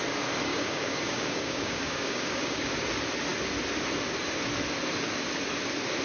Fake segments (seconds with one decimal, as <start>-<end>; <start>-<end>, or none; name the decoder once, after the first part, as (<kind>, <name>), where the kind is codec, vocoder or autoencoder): 0.5-2.7 (codec, DAC)